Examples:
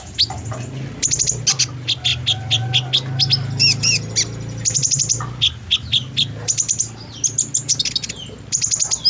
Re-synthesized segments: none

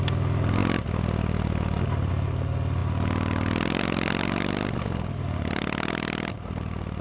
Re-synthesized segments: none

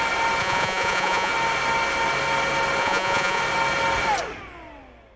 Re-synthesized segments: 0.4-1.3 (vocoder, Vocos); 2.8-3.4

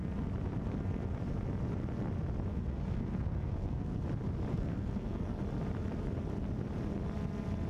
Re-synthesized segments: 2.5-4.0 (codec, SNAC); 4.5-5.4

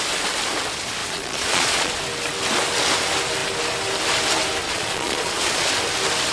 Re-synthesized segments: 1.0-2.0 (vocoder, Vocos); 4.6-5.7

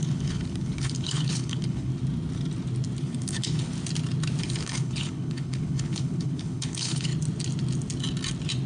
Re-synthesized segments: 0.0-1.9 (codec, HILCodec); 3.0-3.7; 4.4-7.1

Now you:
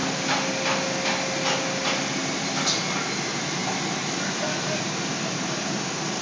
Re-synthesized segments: none